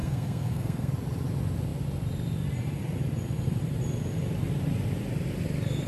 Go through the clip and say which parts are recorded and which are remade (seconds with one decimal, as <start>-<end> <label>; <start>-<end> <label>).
0.0-0.9 remade; 0.9-5.9 recorded